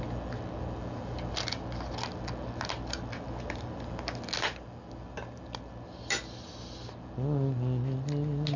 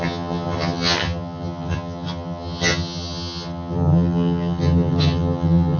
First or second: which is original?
first